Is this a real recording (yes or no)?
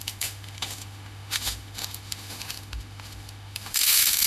no